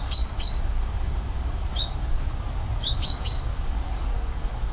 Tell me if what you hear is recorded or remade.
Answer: remade